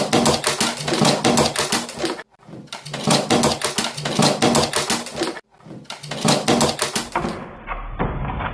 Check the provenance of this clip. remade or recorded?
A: recorded